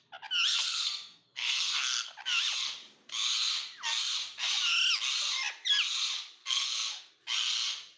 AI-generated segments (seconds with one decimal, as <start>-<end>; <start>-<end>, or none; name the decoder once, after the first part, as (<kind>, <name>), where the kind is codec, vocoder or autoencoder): 0.5-2.1 (codec, SNAC); 6.4-7.1